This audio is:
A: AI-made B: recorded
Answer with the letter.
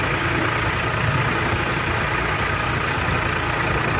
B